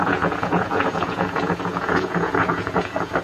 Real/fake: fake